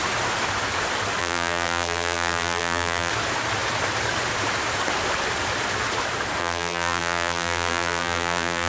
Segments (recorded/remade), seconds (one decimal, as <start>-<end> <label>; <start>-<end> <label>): 0.0-1.2 recorded; 1.2-3.1 remade; 3.1-6.4 recorded; 6.4-8.7 remade